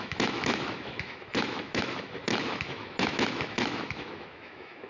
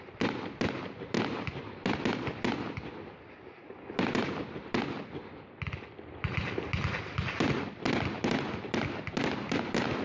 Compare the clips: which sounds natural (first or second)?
second